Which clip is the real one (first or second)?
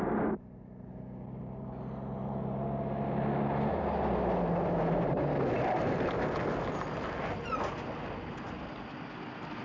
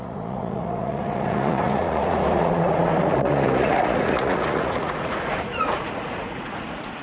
first